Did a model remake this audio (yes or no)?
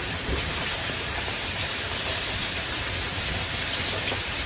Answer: yes